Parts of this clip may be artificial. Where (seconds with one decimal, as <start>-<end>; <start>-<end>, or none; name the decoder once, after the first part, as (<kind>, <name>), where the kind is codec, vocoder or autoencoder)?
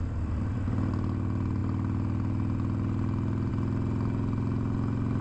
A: none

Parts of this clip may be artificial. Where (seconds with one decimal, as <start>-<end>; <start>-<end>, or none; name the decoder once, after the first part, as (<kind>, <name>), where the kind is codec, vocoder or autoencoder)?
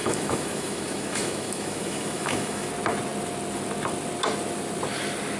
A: 0.0-2.7 (autoencoder, DAC-VAE)